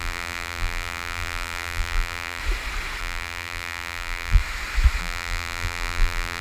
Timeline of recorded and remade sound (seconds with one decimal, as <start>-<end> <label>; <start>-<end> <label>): 0.0-2.4 remade; 2.4-3.0 recorded; 3.0-4.4 remade; 4.4-5.0 recorded; 5.0-6.4 remade